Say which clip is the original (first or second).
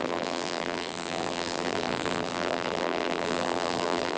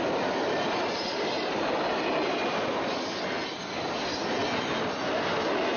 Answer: second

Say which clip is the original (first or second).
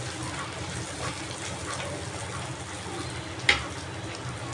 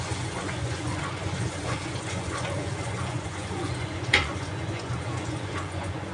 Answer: first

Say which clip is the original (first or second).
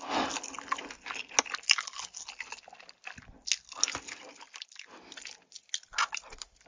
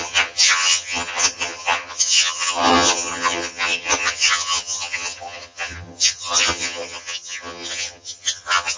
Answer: first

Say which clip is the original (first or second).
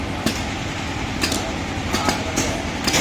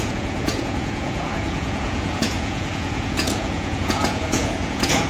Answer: first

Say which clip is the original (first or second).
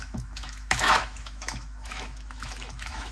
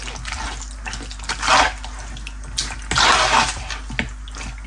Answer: second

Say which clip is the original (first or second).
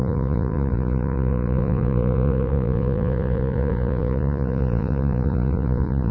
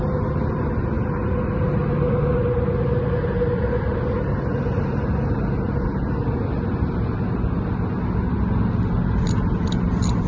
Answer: second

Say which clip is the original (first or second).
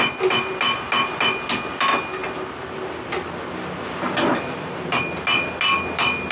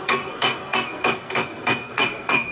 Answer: first